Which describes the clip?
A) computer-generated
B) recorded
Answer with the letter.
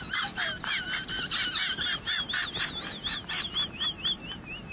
B